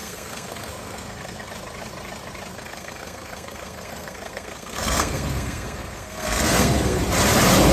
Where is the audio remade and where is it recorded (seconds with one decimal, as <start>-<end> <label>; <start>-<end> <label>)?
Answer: 0.0-1.5 remade; 1.5-2.5 recorded; 2.5-7.0 remade; 7.0-7.7 recorded